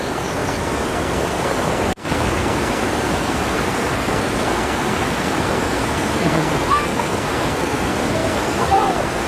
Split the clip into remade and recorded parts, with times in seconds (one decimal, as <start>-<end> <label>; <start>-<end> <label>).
0.0-9.3 remade